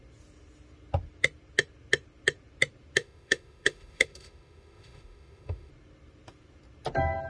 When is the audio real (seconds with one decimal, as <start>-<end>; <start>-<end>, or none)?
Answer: 0.0-3.0; 5.7-7.3